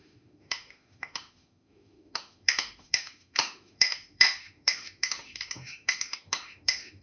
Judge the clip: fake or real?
fake